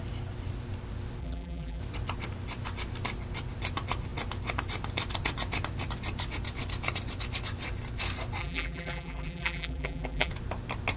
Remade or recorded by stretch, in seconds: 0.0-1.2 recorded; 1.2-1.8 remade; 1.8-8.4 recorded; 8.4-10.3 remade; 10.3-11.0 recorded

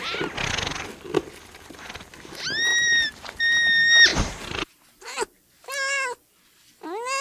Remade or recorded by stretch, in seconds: 0.0-2.7 recorded; 2.7-3.4 remade; 3.4-4.1 recorded; 4.1-5.1 remade; 5.1-7.2 recorded

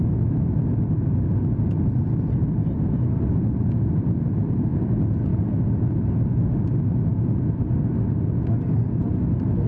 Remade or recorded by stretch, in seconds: 0.0-9.7 recorded

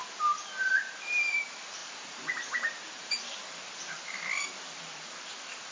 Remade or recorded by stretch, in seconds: 0.0-0.7 recorded; 0.7-5.7 remade